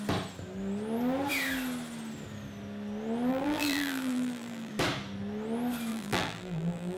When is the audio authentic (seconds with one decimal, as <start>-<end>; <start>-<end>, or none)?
0.0-3.3; 4.7-5.9